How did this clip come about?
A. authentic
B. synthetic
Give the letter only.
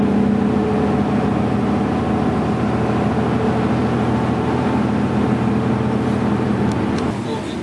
A